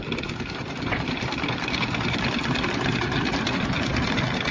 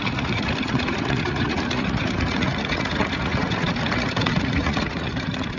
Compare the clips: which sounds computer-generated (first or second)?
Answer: second